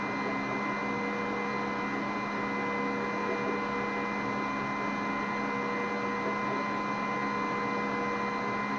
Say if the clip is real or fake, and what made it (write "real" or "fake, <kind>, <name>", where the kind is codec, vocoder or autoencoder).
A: real